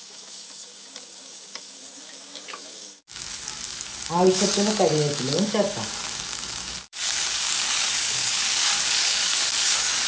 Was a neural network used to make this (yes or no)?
yes